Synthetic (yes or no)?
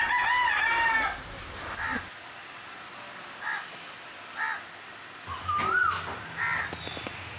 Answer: no